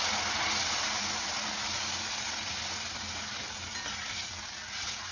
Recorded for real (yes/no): yes